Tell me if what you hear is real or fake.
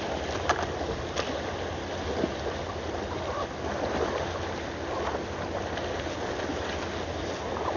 real